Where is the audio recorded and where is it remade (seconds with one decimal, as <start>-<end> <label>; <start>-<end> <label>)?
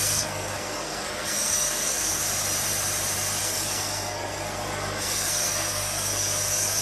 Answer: 0.0-2.2 remade; 2.2-3.4 recorded; 3.4-6.8 remade